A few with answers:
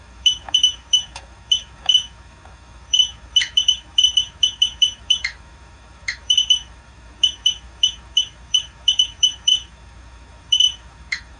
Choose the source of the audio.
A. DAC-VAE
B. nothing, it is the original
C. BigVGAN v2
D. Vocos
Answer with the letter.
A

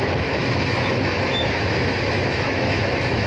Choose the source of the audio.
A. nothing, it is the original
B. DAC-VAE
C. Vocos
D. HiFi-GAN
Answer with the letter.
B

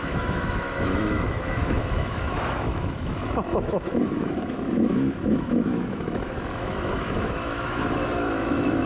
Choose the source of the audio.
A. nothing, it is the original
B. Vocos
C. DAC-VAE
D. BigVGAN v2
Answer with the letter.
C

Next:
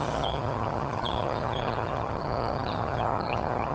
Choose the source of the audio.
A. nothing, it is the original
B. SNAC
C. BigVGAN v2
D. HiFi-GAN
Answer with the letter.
D